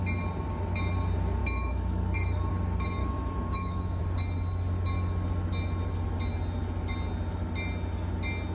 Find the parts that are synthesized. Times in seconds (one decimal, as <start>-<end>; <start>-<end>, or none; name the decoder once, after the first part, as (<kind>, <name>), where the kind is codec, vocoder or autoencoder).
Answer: 1.4-2.5 (autoencoder, DAC-VAE); 3.0-4.0